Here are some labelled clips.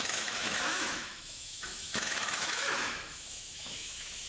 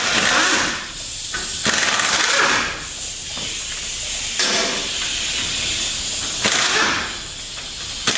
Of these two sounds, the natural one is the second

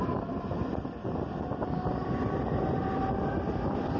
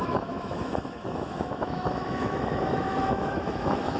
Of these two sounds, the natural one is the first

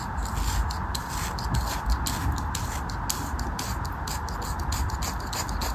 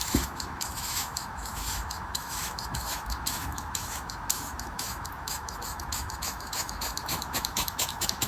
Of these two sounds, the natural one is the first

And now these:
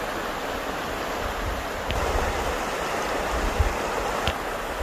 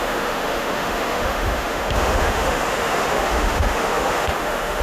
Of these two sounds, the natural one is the first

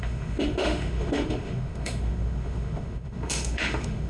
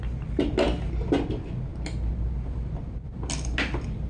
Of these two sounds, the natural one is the second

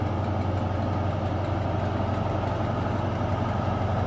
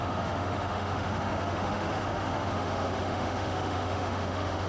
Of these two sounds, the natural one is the first